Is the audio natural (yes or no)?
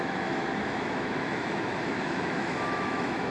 no